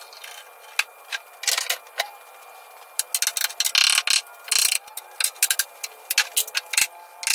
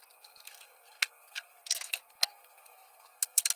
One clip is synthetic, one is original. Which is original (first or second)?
first